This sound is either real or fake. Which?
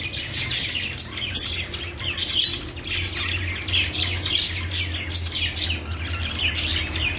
real